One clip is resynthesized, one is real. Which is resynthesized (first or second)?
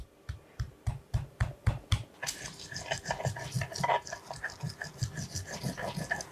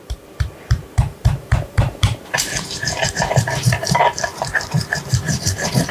second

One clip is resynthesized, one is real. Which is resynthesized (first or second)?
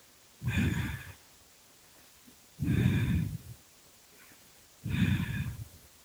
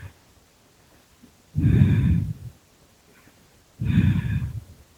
first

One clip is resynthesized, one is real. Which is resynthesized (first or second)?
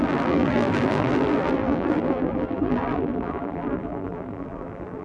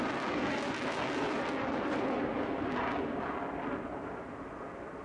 first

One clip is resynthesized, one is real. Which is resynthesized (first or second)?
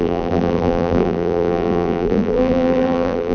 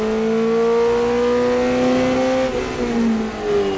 first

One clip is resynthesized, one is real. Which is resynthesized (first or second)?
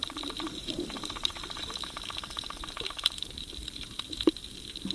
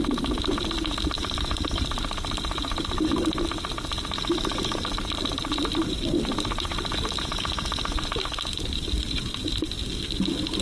first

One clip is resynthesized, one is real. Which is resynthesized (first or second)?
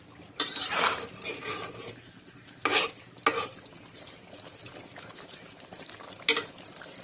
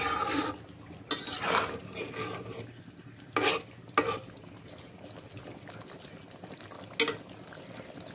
first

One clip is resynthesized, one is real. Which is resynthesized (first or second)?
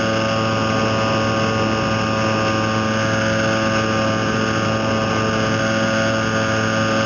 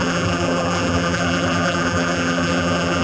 second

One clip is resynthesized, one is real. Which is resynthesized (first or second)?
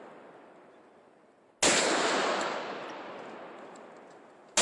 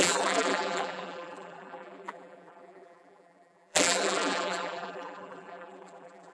second